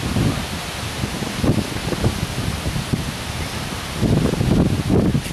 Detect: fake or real real